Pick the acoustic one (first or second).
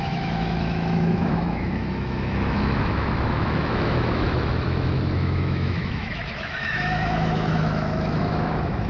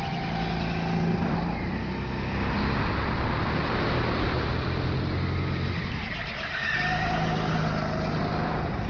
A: second